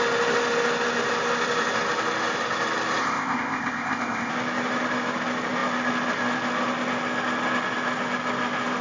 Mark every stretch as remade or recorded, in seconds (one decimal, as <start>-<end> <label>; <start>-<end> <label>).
0.0-3.0 recorded; 3.0-4.3 remade; 4.3-8.8 recorded